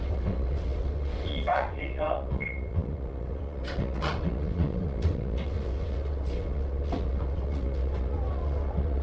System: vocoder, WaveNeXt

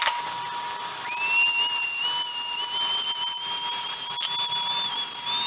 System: none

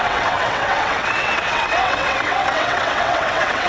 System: vocoder, WaveNeXt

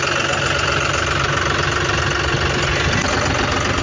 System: none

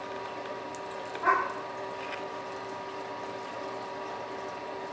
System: none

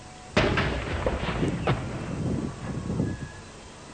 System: none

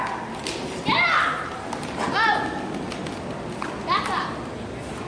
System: none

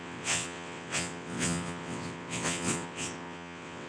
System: vocoder, WaveNeXt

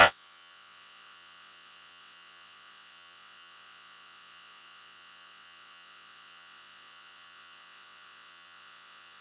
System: vocoder, WaveNeXt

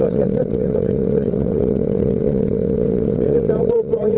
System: vocoder, WaveNeXt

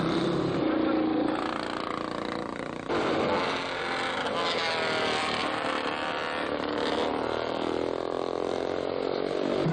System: none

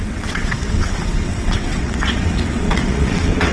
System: vocoder, WaveNeXt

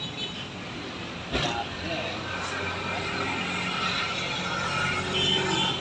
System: none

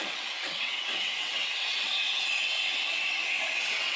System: vocoder, WaveNeXt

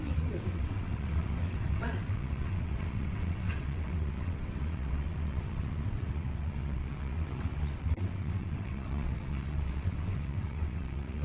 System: vocoder, WaveNeXt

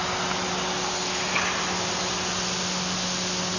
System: none